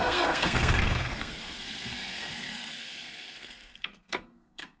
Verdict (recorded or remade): remade